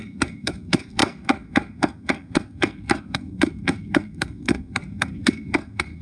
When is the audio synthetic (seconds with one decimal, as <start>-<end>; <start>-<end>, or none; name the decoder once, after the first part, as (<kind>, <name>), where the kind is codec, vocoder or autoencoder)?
0.0-6.0 (codec, SNAC)